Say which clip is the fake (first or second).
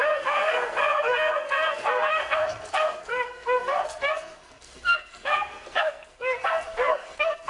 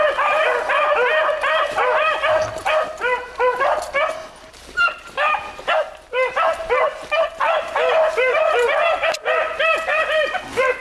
first